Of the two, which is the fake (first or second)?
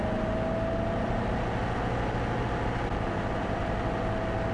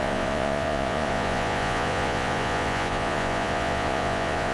second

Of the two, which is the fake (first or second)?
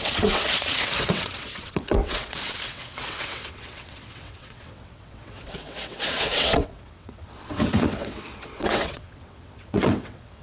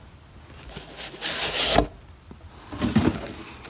first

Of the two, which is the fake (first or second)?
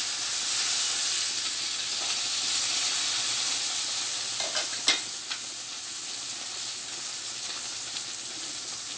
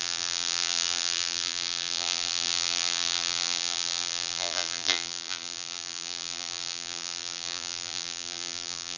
second